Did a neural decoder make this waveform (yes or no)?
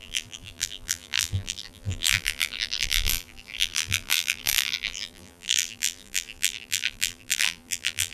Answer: yes